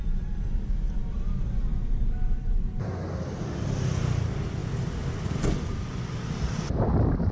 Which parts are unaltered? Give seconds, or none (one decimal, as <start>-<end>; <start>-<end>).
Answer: 0.0-1.0; 2.9-7.3